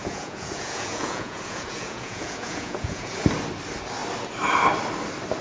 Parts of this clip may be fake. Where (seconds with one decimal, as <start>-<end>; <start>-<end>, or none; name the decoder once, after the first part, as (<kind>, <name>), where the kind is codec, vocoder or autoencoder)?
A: 0.0-3.2 (vocoder, Vocos)